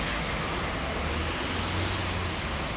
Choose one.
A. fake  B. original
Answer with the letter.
B